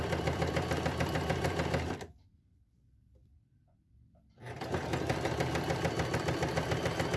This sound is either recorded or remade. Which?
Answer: remade